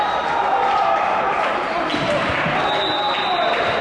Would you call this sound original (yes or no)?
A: yes